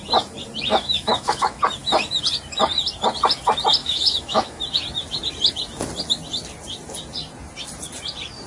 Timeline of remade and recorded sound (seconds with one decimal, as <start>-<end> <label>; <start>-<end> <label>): 0.0-0.7 recorded; 0.7-1.6 remade; 1.6-3.8 recorded; 3.8-4.6 remade; 4.6-8.5 recorded